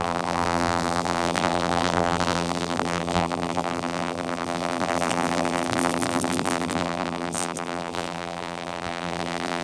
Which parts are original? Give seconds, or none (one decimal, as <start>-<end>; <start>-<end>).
none